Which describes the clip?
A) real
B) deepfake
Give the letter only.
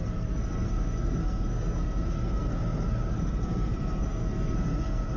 B